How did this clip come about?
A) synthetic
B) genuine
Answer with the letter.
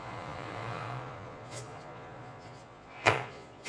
A